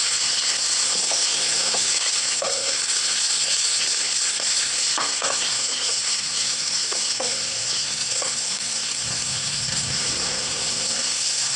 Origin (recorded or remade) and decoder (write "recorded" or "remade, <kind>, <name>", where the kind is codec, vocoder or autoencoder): remade, codec, SNAC